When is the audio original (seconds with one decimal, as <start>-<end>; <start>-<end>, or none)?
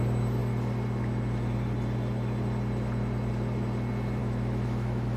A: 0.0-4.2